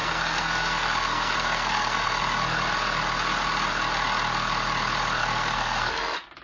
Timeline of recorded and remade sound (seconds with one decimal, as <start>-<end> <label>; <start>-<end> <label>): 0.0-2.2 remade; 2.2-5.2 recorded; 5.2-5.9 remade; 5.9-6.4 recorded